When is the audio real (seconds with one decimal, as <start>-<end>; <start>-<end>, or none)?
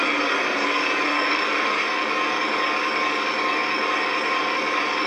none